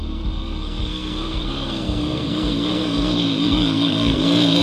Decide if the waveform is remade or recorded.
remade